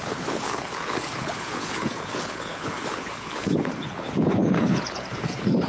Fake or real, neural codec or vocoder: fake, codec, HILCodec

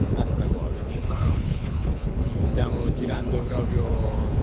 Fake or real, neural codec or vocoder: fake, codec, HILCodec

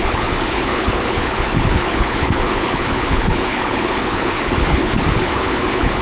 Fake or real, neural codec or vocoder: fake, codec, HILCodec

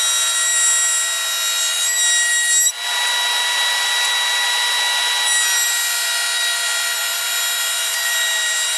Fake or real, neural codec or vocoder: real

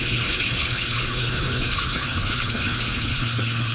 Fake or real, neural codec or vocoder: fake, codec, HILCodec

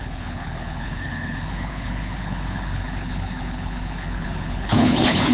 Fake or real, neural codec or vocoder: fake, codec, HILCodec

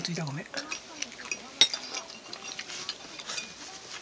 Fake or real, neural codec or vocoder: real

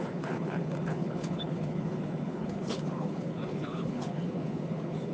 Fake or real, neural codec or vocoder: fake, codec, HILCodec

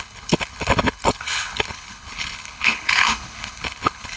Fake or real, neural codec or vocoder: fake, codec, HILCodec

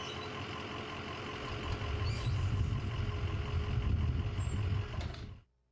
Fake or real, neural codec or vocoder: real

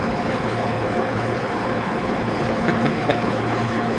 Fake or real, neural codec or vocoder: fake, codec, HILCodec